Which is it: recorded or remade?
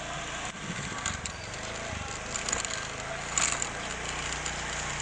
recorded